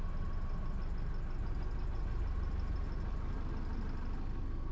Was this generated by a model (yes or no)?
no